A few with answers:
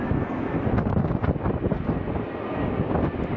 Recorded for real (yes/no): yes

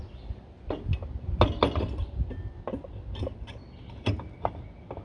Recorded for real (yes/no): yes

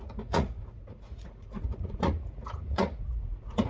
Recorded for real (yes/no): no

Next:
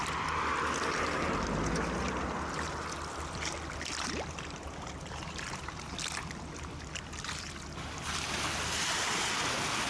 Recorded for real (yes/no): yes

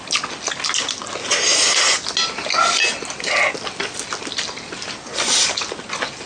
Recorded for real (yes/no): yes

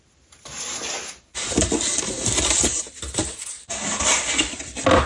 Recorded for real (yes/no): yes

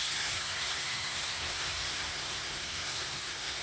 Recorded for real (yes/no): no